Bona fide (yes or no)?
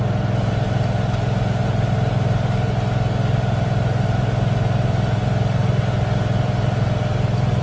yes